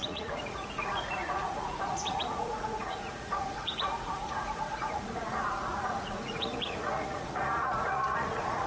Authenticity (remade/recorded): remade